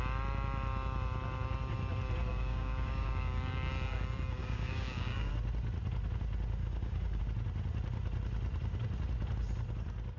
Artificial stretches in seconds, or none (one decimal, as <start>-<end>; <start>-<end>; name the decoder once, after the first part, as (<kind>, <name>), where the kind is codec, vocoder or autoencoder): 2.3-3.7 (codec, DAC); 4.4-5.3; 6.6-7.2